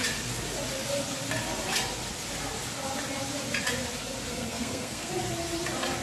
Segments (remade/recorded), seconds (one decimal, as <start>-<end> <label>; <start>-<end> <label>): 0.0-4.3 recorded; 4.3-5.1 remade; 5.1-6.0 recorded